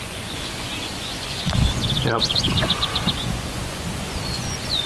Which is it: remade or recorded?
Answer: remade